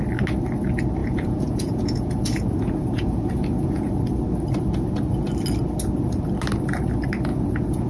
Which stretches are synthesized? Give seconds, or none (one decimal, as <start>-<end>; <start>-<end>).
1.0-3.9; 7.3-7.9